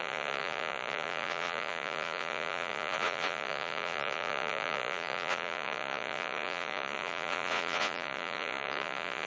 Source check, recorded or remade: remade